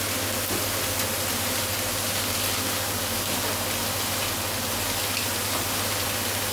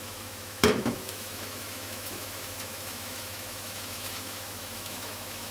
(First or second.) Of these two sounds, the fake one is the second